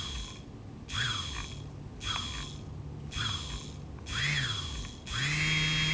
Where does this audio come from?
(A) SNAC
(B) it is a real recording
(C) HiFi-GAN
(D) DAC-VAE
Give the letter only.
B